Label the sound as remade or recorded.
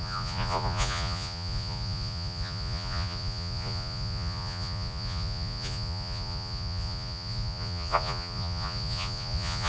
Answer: remade